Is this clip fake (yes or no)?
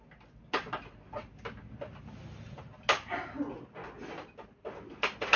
no